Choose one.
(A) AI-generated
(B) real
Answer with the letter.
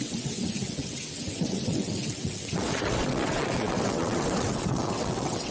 A